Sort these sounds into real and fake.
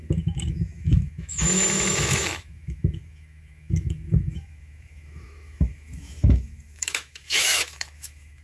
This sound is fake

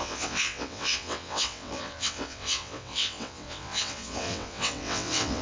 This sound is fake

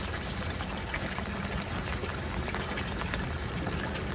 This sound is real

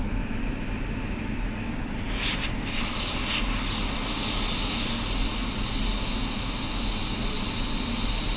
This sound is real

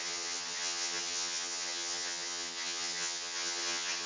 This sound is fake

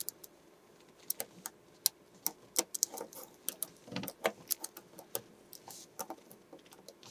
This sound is real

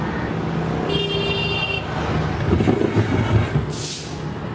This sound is real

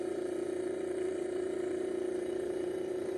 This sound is fake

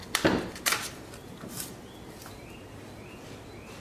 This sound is real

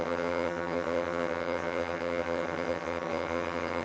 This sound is fake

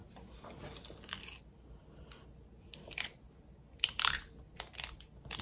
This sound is real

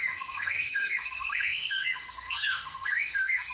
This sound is fake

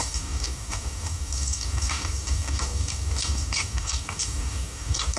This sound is fake